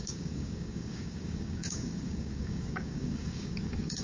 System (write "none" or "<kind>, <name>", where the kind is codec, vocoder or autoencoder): codec, DAC